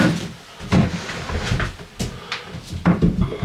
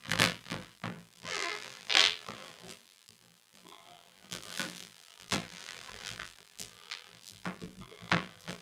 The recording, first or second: first